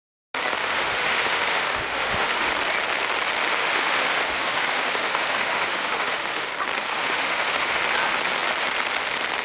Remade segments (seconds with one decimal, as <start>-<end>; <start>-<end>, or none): 0.6-2.5; 3.6-6.5; 6.9-7.8